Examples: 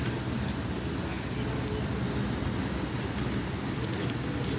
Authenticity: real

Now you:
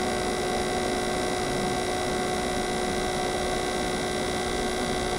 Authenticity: real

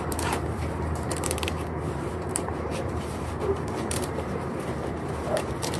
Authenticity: fake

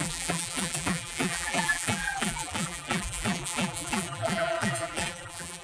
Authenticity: fake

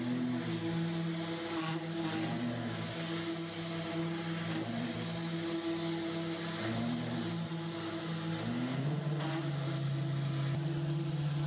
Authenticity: real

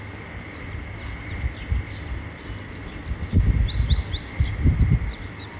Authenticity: real